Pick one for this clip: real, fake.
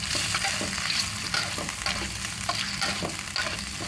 real